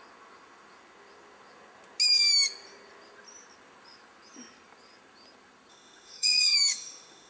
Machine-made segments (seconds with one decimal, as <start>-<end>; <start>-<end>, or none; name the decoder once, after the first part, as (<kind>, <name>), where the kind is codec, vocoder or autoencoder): 5.7-7.3 (autoencoder, DAC-VAE)